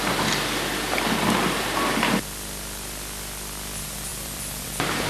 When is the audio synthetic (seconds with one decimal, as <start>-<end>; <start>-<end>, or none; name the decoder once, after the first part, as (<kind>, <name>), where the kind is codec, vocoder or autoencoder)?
4.1-5.1 (vocoder, BigVGAN v2)